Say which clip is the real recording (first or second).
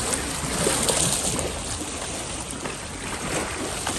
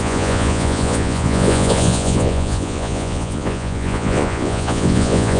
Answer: first